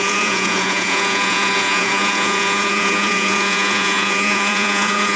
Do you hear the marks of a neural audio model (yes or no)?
yes